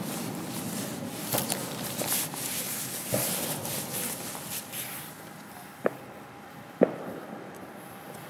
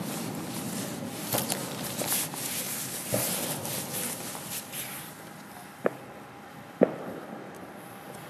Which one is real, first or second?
second